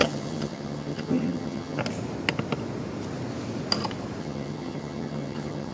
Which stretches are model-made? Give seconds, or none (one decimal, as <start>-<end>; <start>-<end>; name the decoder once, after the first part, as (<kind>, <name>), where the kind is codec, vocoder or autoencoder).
0.0-1.8 (vocoder, HiFi-GAN); 4.2-5.7